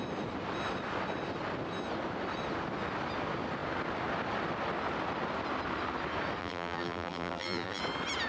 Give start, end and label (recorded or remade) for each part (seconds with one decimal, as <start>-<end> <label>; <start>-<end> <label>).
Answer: 0.0-6.4 recorded; 6.4-7.8 remade; 7.8-8.3 recorded